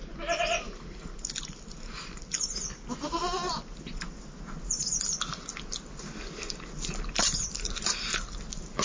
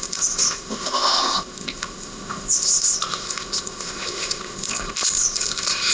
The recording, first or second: first